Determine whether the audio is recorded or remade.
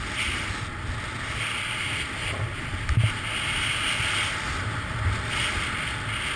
recorded